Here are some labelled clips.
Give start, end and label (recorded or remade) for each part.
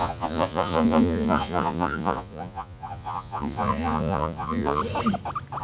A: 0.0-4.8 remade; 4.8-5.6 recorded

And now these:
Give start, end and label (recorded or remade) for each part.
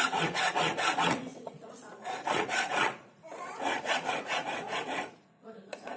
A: 0.0-6.0 remade